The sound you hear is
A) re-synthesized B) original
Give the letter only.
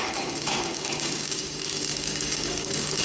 A